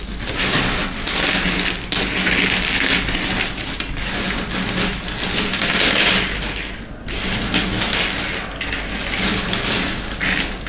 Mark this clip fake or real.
real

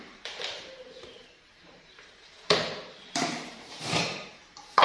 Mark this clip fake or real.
fake